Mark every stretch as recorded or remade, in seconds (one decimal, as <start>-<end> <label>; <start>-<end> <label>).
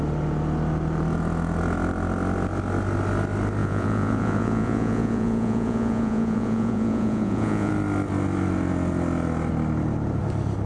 0.0-3.6 recorded; 3.6-7.7 remade; 7.7-10.7 recorded